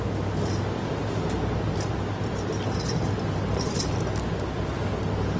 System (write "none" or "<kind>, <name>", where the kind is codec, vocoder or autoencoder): none